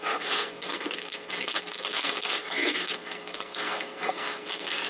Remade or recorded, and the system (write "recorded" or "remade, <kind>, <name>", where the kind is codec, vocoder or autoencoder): remade, codec, SNAC